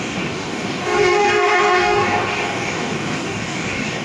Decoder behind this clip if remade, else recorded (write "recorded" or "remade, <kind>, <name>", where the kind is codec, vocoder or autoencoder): remade, codec, DAC